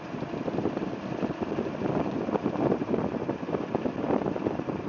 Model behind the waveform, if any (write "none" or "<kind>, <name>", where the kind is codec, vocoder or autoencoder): none